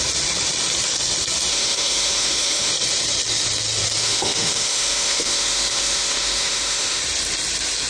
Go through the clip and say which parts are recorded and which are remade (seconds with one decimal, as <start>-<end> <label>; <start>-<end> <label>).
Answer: 0.0-1.5 recorded; 1.5-2.7 remade; 2.7-4.0 recorded; 4.0-7.0 remade; 7.0-7.9 recorded